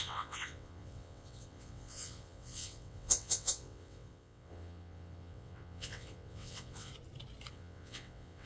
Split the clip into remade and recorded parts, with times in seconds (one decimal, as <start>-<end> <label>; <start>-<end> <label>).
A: 0.0-6.9 remade; 6.9-7.5 recorded; 7.5-8.5 remade